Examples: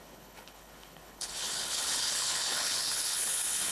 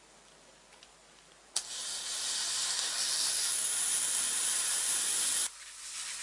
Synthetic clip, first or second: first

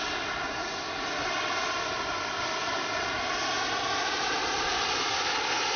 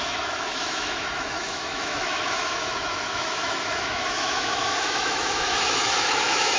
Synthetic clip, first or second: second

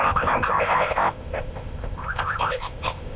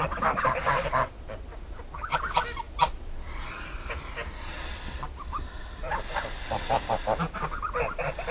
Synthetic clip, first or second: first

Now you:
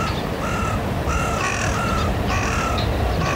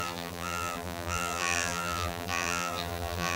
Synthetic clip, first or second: second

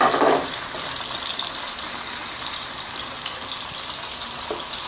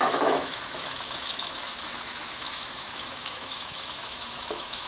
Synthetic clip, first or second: second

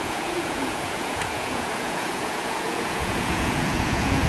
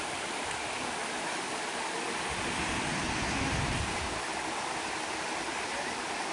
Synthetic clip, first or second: first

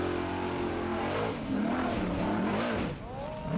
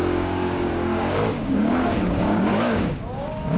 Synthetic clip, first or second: second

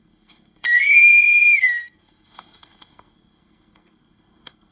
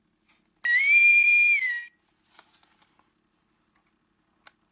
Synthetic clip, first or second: first